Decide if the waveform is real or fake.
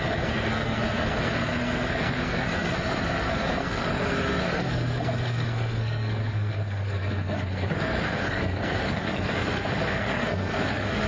fake